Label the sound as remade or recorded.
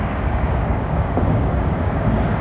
remade